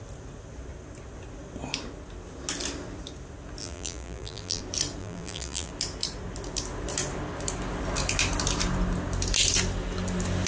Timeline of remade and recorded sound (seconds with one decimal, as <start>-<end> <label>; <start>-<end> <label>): 0.0-3.6 recorded; 3.6-4.6 remade; 4.6-5.0 recorded; 5.0-5.7 remade; 5.7-10.5 recorded